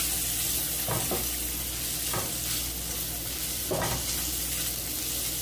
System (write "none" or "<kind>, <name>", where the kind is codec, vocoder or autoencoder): none